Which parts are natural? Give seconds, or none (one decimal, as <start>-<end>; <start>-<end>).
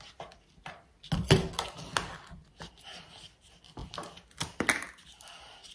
0.0-5.7